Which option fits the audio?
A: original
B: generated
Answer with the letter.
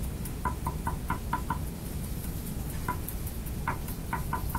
A